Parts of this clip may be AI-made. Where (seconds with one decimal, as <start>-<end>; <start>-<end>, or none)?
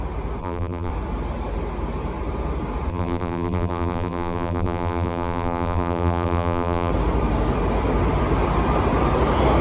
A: 0.4-0.9; 2.9-6.9